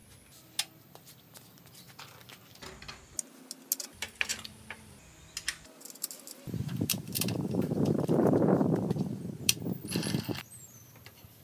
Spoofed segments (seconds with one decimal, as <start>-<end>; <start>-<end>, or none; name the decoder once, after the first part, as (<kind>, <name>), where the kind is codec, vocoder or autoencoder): 3.9-4.3 (vocoder, BigVGAN v2); 6.6-11.4